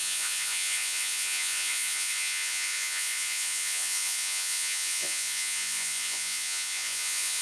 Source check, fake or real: fake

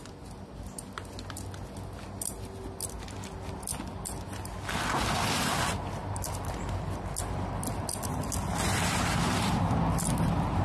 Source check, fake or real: real